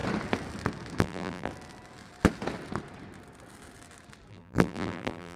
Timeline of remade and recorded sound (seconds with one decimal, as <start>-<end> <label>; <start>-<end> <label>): 0.0-1.0 recorded; 1.0-1.5 remade; 1.5-4.3 recorded; 4.3-5.4 remade